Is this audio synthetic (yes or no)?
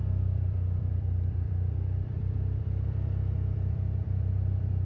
yes